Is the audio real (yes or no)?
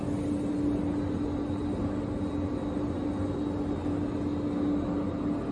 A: yes